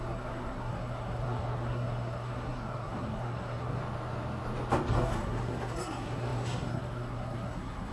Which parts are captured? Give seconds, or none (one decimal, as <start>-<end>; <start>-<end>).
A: 3.8-4.9